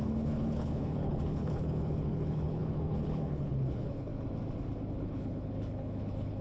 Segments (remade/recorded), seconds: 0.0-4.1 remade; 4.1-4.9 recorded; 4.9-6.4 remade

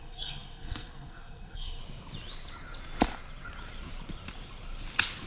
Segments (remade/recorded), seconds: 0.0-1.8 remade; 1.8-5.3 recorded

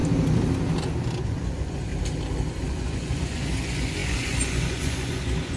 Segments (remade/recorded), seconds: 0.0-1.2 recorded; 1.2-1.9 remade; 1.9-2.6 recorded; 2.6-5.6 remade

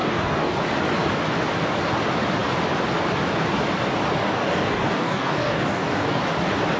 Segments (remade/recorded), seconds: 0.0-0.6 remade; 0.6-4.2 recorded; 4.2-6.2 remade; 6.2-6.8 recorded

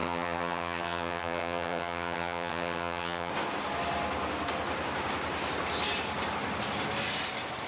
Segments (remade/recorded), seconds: 0.0-3.3 remade; 3.3-7.7 recorded

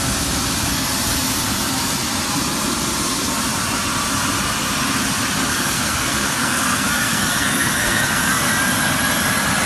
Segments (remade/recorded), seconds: 0.0-5.5 recorded; 5.5-8.5 remade; 8.5-9.7 recorded

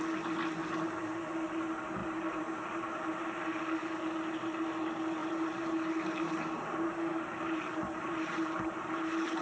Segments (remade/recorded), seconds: 0.0-0.6 recorded; 0.6-1.2 remade; 1.2-2.0 recorded; 2.0-4.1 remade; 4.1-5.2 recorded; 5.2-9.4 remade